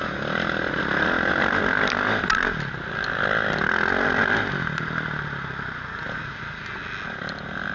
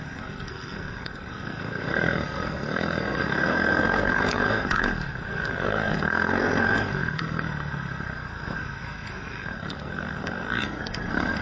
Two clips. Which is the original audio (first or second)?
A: first